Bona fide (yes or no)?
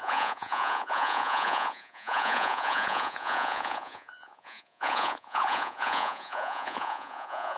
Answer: no